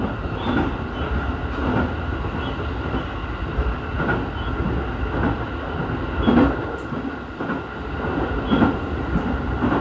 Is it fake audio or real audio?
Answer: real